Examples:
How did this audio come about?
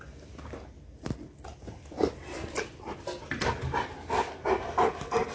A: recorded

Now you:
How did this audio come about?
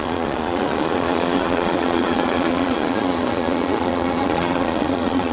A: remade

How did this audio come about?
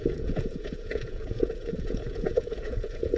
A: remade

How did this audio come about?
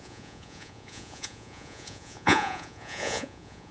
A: remade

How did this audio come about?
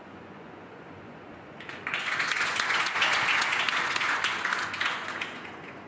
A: remade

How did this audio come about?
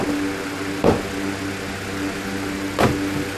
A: recorded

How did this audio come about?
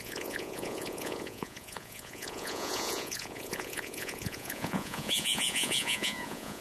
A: remade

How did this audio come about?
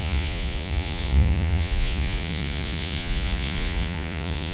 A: remade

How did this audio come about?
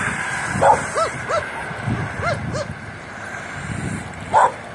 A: recorded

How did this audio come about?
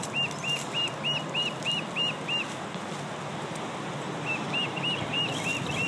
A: recorded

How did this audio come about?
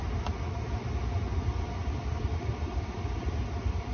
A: recorded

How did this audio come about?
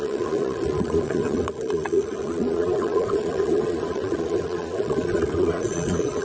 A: remade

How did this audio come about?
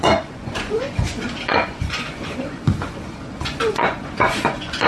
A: remade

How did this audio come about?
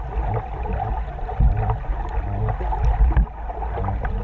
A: recorded